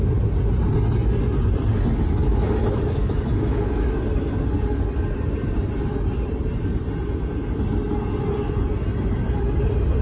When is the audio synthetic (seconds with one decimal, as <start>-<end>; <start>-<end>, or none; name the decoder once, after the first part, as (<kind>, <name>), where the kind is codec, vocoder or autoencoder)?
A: 2.2-4.0 (autoencoder, DAC-VAE)